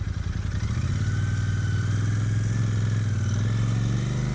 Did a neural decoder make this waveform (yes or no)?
no